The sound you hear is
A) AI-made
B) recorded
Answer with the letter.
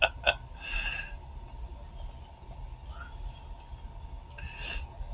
B